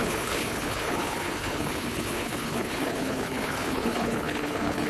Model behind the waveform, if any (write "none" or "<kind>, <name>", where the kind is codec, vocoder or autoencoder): codec, HILCodec